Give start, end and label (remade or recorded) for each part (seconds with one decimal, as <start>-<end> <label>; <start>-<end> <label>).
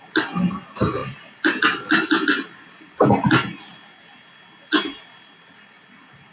0.0-6.3 recorded